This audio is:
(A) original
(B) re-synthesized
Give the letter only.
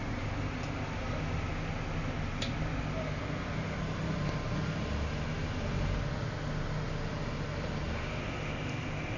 A